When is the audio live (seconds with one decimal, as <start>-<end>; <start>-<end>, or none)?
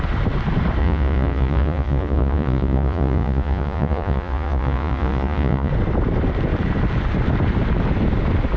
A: 0.0-0.8; 5.7-8.6